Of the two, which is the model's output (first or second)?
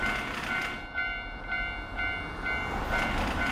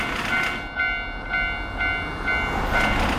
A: first